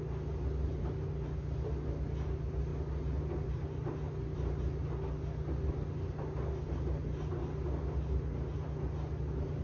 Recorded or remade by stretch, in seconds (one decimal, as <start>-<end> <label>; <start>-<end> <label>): 0.0-9.6 recorded

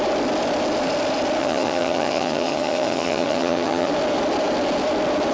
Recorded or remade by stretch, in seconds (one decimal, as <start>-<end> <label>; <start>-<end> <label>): 0.0-1.4 recorded; 1.4-3.9 remade; 3.9-5.3 recorded

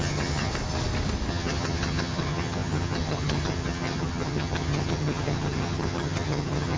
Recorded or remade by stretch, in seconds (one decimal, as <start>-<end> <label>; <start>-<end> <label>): 0.0-0.5 remade; 0.5-1.3 recorded; 1.3-6.8 remade

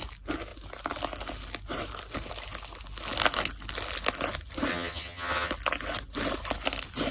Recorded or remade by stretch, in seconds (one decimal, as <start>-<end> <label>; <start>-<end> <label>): 0.0-4.7 recorded; 4.7-5.5 remade; 5.5-7.1 recorded